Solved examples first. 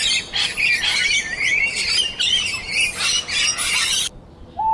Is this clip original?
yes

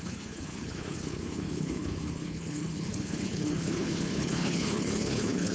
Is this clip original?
no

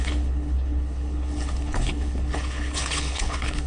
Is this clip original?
no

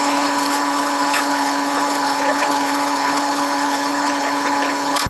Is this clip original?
no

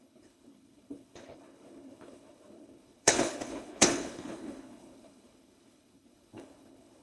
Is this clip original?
no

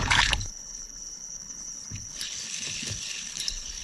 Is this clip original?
no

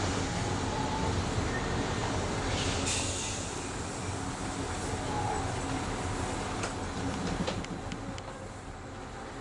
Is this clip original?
yes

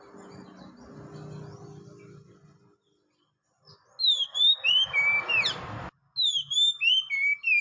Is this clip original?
yes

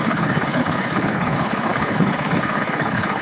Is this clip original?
no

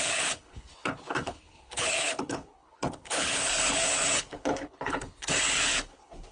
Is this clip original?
no